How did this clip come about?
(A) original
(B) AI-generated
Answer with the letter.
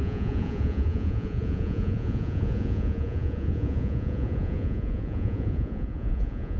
B